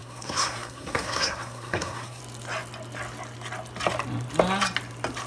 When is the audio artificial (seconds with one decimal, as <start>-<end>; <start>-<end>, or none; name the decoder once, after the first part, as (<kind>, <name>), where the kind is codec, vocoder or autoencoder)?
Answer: 0.0-2.2 (codec, SNAC)